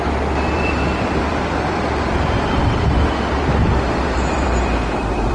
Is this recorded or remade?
remade